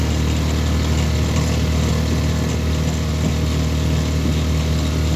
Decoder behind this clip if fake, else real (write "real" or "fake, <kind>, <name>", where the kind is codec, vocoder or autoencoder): real